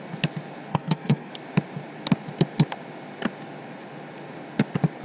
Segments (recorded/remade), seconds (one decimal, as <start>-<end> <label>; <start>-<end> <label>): 0.0-0.7 recorded; 0.7-1.3 remade; 1.3-5.0 recorded